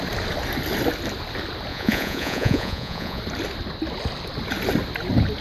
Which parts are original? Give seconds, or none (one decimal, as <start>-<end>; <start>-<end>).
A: 0.0-1.7; 3.2-5.4